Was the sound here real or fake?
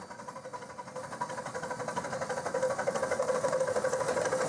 real